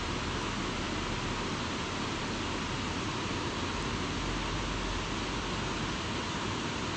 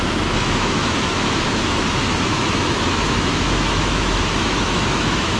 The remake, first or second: second